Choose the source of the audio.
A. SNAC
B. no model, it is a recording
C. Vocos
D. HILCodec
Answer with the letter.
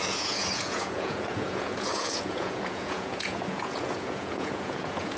C